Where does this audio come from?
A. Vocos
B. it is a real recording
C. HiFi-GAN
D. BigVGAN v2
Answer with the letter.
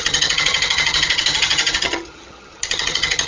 C